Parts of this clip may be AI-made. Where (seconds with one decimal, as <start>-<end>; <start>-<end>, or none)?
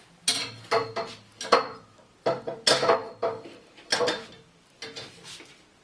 none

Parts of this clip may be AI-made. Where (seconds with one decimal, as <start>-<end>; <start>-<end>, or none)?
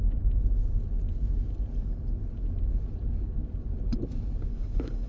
4.5-5.1